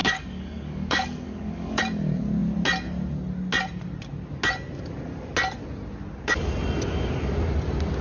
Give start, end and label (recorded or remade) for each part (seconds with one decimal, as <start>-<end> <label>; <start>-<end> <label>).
0.0-1.8 remade; 1.8-8.0 recorded